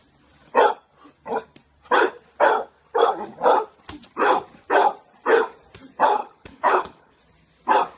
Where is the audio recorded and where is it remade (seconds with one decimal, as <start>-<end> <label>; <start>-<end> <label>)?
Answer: 0.0-6.2 recorded; 6.2-7.2 remade; 7.2-8.0 recorded